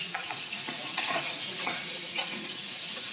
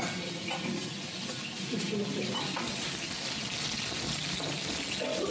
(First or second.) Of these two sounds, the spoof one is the first